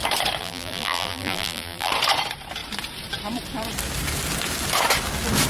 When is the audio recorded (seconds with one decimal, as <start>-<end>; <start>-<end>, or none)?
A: 0.0-0.4; 1.9-5.5